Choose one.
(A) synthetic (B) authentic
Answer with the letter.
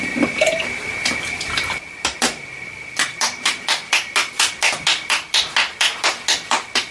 B